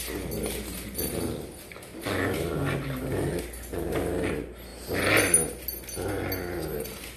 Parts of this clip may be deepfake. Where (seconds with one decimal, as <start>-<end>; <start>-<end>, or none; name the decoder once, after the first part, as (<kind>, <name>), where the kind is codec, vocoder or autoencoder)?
none